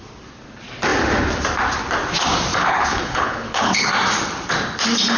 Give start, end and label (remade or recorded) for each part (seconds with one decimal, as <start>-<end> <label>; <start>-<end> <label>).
0.0-2.5 recorded; 2.5-3.9 remade; 3.9-5.2 recorded